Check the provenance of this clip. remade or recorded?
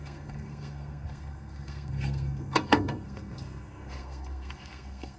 remade